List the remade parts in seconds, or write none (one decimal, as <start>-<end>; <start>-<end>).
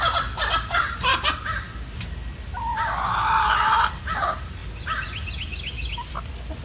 none